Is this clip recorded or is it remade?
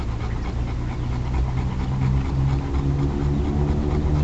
recorded